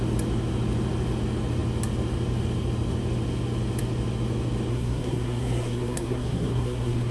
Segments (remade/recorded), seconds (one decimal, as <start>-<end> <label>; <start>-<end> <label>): 0.0-4.7 recorded; 4.7-7.1 remade